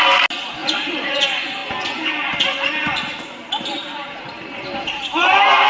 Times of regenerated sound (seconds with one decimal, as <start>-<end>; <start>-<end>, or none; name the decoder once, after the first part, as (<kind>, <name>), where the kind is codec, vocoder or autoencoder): 0.6-1.2 (vocoder, Vocos)